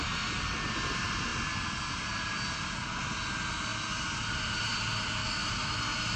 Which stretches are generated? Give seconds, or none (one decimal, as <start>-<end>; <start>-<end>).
5.2-5.8